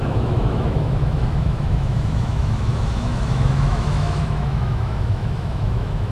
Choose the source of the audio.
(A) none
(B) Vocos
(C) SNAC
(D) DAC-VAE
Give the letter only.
D